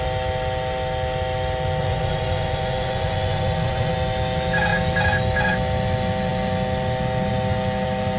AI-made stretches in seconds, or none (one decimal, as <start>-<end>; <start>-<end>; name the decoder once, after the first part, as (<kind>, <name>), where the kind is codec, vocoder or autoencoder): 1.8-3.9 (vocoder, Vocos)